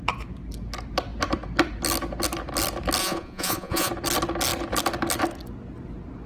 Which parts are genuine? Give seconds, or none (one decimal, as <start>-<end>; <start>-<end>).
0.0-3.0; 3.9-6.3